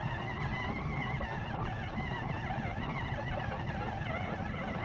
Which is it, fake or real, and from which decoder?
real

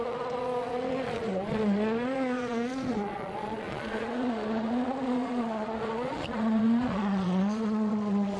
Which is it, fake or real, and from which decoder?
fake, vocoder, Vocos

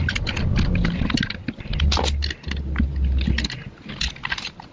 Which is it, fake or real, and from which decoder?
real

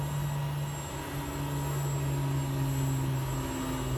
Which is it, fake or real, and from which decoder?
real